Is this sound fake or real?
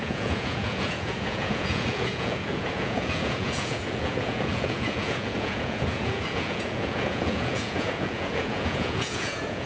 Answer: fake